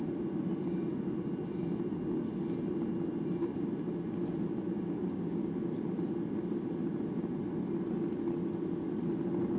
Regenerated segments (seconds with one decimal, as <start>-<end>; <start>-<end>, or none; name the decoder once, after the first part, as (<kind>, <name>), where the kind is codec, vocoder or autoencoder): 5.0-5.5 (codec, DAC)